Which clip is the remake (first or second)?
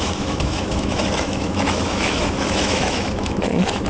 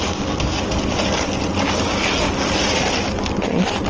first